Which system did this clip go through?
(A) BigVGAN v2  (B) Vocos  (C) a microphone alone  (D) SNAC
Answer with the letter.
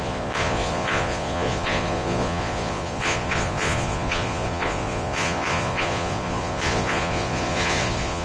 B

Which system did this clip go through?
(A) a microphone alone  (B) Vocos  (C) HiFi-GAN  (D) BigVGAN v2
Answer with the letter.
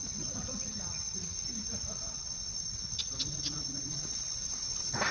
B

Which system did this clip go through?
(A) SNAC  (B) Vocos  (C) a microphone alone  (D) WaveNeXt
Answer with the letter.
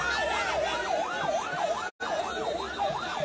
C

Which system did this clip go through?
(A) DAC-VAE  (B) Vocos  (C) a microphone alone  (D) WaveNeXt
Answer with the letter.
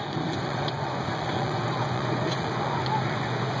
B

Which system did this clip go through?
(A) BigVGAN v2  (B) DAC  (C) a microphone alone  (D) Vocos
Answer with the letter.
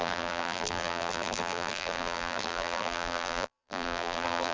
A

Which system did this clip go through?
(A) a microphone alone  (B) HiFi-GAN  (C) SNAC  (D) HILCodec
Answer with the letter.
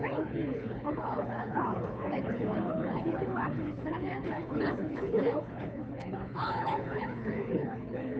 D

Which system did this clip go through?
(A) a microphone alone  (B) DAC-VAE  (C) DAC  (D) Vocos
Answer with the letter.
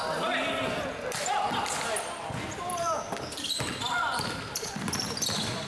A